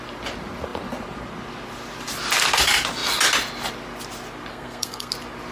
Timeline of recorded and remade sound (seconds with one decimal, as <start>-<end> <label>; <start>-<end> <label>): 0.0-4.5 recorded; 4.5-5.1 remade; 5.1-5.5 recorded